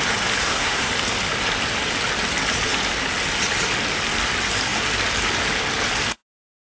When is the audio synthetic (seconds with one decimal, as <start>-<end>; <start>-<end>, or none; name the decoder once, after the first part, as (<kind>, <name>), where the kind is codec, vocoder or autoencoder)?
0.4-0.9 (codec, SNAC)

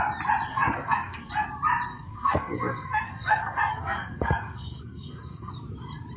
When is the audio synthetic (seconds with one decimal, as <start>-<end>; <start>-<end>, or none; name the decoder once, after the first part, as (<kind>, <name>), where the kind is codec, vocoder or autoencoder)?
0.5-1.3 (codec, SNAC); 1.9-5.5

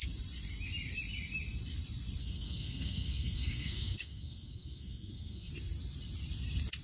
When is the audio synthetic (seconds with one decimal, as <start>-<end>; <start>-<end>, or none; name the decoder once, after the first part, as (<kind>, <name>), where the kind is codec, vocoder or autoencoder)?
2.2-5.5 (codec, SNAC)

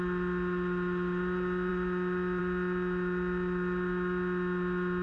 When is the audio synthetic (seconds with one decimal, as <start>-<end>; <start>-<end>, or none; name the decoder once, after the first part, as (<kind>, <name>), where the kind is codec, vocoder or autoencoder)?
none

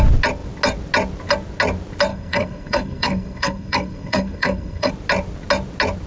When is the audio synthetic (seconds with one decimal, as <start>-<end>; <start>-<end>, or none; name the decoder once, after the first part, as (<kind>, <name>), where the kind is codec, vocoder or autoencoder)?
2.1-4.9 (codec, SNAC)

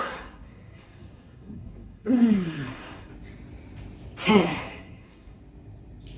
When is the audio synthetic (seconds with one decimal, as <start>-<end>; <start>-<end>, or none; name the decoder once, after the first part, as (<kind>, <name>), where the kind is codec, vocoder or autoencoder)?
0.0-3.1 (codec, SNAC); 4.3-5.4

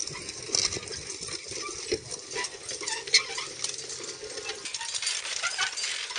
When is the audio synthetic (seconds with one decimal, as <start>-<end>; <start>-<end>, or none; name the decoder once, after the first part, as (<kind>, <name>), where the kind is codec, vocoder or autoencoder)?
none